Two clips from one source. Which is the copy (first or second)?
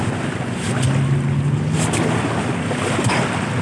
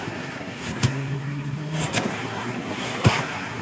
second